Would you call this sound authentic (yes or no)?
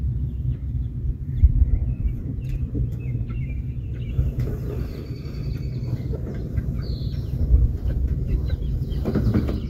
no